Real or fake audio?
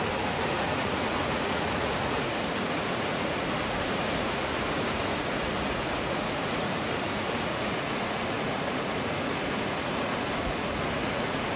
fake